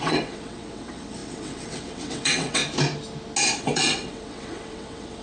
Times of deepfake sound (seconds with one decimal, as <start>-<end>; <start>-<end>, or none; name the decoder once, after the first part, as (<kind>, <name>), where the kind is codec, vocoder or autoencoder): 0.0-2.6 (vocoder, WaveNeXt); 3.6-5.2